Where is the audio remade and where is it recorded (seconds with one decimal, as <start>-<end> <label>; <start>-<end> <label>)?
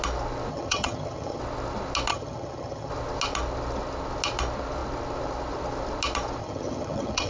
0.0-0.5 recorded; 0.5-1.4 remade; 1.4-2.1 recorded; 2.1-2.9 remade; 2.9-6.4 recorded; 6.4-7.3 remade